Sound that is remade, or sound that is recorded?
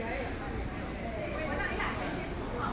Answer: recorded